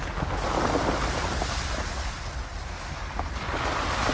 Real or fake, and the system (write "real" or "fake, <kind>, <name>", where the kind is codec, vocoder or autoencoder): real